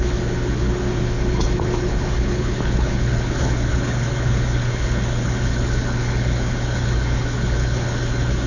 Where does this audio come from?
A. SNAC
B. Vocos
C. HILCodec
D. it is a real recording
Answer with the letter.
C